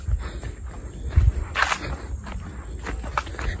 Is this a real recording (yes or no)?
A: yes